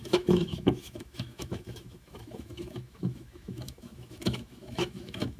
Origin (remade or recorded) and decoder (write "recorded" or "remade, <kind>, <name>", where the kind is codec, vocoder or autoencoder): remade, autoencoder, DAC-VAE